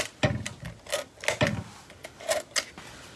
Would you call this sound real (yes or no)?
yes